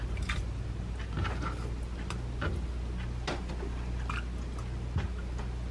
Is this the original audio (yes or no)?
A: yes